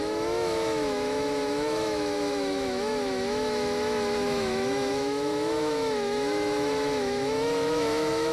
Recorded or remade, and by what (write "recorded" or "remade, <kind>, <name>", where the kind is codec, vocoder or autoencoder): remade, autoencoder, DAC-VAE